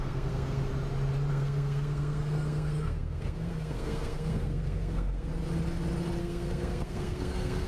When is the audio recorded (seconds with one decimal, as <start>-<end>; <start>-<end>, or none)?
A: 0.7-1.3; 5.3-6.2